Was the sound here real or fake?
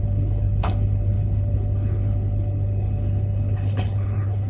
fake